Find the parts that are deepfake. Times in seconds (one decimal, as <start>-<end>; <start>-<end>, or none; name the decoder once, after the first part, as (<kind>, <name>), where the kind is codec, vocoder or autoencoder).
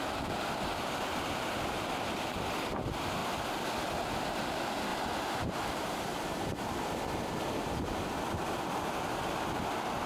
0.7-2.8 (vocoder, BigVGAN v2); 4.9-8.6